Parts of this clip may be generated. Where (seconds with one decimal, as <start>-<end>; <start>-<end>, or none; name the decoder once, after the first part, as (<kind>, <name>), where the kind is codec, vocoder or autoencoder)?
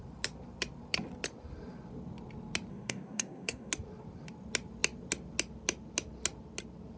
2.7-3.7 (codec, SNAC)